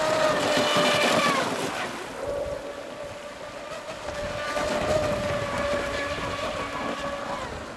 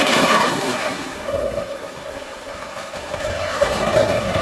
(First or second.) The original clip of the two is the first